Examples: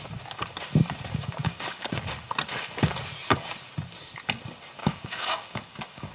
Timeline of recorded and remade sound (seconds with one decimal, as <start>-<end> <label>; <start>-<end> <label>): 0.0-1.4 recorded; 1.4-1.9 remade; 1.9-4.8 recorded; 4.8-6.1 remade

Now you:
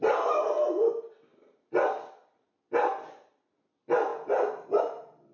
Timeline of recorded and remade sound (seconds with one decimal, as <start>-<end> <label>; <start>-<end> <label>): 0.0-5.3 recorded

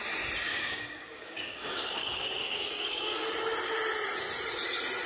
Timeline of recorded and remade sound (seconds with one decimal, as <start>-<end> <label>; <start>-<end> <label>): 0.0-0.5 recorded; 0.5-3.3 remade; 3.3-5.1 recorded